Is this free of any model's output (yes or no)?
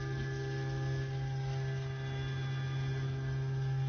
yes